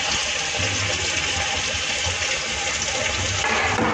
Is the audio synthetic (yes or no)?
no